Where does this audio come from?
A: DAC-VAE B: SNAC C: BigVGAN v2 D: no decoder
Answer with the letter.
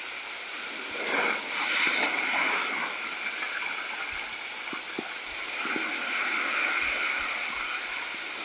D